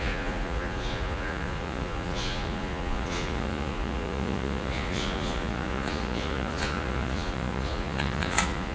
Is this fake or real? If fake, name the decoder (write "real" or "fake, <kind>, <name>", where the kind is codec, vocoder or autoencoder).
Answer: fake, vocoder, Vocos